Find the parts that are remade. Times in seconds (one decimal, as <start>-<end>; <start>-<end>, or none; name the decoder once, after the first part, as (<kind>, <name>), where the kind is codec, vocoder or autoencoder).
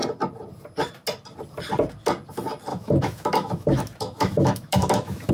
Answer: 2.7-5.3 (autoencoder, DAC-VAE)